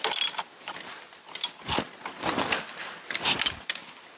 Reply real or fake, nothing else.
real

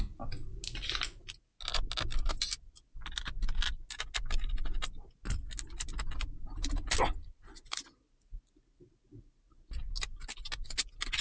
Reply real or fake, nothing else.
real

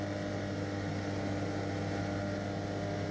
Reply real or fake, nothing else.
real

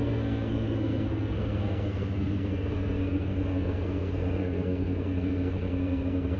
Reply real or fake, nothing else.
fake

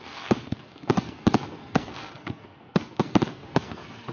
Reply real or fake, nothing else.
fake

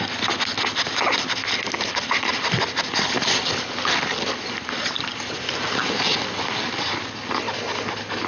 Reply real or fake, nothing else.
real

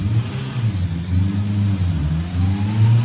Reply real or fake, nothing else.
real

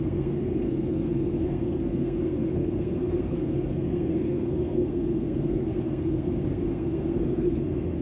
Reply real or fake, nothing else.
fake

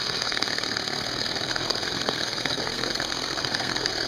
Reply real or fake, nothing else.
fake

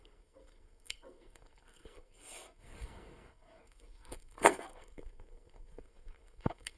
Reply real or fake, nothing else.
fake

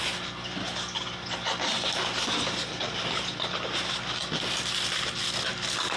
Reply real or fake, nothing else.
real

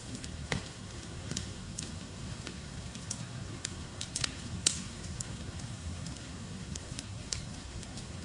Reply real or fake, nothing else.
fake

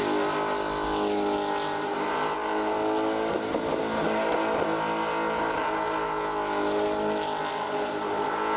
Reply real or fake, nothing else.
real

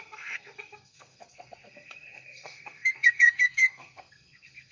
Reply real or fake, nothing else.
fake